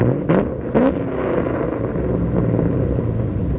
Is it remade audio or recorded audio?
recorded